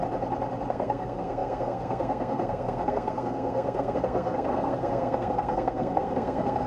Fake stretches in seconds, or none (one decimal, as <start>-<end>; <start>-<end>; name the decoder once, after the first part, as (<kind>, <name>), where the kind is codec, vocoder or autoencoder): 0.7-6.7 (codec, SNAC)